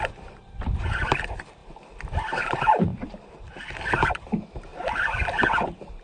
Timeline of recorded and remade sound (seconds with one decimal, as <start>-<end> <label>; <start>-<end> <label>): 0.0-1.6 remade; 1.6-2.4 recorded; 2.4-4.7 remade; 4.7-5.6 recorded; 5.6-6.0 remade